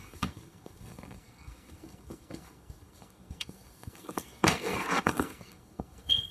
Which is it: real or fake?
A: fake